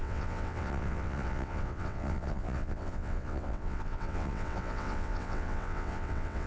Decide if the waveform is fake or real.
fake